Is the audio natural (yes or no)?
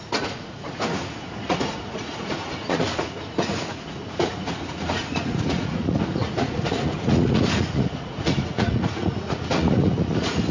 no